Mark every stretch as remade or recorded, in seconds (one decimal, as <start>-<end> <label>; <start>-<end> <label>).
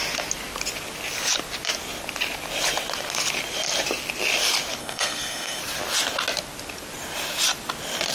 0.0-4.8 recorded; 4.8-5.6 remade; 5.6-8.1 recorded